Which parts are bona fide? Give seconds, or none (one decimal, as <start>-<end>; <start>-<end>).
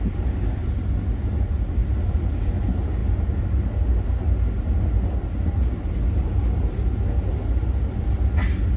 0.0-8.8